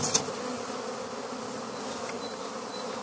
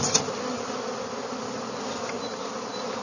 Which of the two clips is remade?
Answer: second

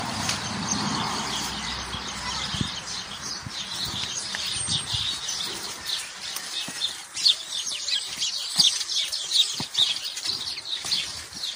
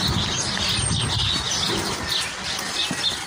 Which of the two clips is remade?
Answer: first